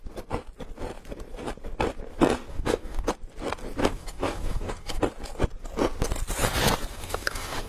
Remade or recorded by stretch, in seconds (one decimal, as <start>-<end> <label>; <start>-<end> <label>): 0.0-2.5 recorded; 2.5-3.1 remade; 3.1-3.8 recorded; 3.8-5.0 remade; 5.0-6.9 recorded; 6.9-7.7 remade

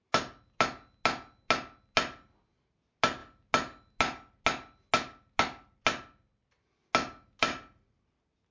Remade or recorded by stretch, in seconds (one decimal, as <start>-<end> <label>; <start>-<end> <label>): 0.0-8.5 recorded

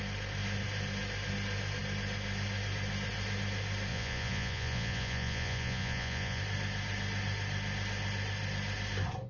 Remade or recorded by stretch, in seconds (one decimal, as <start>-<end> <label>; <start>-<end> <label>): 0.0-3.9 recorded; 3.9-6.4 remade; 6.4-9.3 recorded

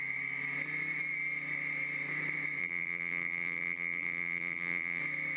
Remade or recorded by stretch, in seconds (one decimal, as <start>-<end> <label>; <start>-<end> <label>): 0.0-2.6 recorded; 2.6-5.0 remade; 5.0-5.4 recorded

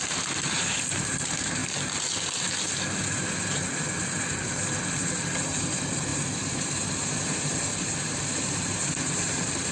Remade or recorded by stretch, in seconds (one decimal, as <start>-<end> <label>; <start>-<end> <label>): 0.0-1.6 remade; 1.6-4.8 recorded; 4.8-9.7 remade

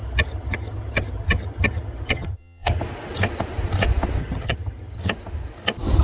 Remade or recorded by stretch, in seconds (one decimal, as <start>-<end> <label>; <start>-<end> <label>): 0.0-2.8 remade; 2.8-4.2 recorded; 4.2-5.0 remade; 5.0-6.0 recorded

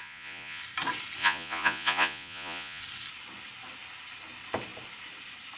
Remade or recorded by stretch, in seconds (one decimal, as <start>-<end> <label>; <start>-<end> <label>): 0.0-0.6 remade; 0.6-1.2 recorded; 1.2-2.8 remade; 2.8-5.6 recorded

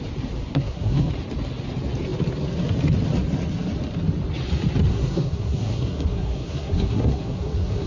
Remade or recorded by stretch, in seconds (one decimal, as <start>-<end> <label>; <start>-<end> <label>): 0.0-0.4 recorded; 0.4-1.1 remade; 1.1-4.9 recorded; 4.9-7.9 remade